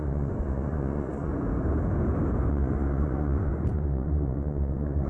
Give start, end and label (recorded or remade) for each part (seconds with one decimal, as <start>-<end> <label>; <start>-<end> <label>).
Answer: 0.0-1.3 remade; 1.3-2.5 recorded; 2.5-5.1 remade